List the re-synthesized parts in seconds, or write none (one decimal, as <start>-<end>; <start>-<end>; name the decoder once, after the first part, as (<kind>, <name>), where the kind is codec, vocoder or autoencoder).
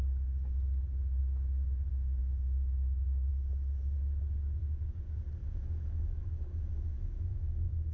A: 2.2-3.3 (autoencoder, DAC-VAE); 5.4-7.9